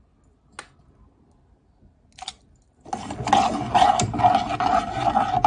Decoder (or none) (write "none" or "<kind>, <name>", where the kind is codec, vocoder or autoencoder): none